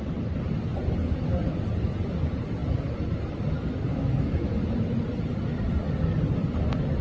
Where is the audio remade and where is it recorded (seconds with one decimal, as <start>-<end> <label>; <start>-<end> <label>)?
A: 0.0-3.9 recorded; 3.9-4.5 remade; 4.5-7.0 recorded